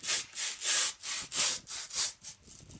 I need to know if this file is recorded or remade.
recorded